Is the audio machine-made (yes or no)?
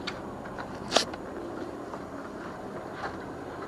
yes